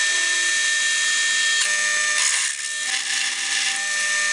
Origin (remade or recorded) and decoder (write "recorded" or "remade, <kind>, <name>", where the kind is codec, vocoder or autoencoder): recorded